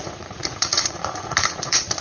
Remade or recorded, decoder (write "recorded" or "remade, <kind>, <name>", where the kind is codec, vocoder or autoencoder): remade, vocoder, Vocos